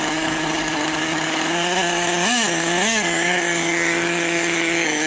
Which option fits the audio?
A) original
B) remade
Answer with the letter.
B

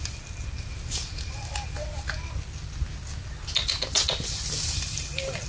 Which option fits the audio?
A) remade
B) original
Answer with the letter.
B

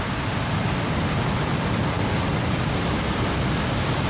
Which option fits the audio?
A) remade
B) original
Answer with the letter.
B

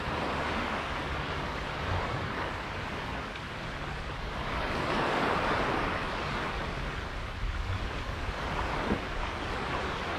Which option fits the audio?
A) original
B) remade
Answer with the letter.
B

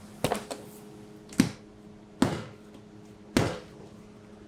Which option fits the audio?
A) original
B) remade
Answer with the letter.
A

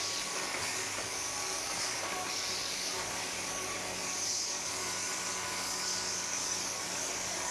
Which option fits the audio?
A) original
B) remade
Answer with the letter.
B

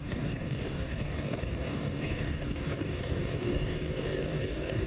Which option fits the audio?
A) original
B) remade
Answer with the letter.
B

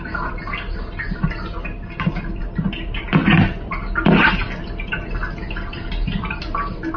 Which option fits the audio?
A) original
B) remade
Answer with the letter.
A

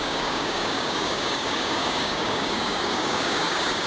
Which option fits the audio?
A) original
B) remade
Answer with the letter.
B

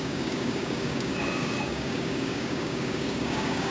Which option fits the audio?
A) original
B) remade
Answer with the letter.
B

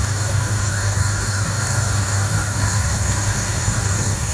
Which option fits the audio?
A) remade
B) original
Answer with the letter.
A